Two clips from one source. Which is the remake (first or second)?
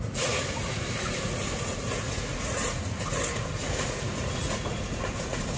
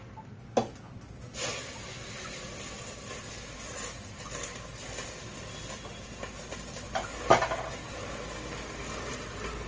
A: first